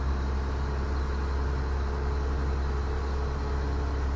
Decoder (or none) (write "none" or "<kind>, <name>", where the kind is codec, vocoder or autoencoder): none